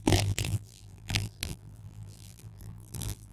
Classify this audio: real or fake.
fake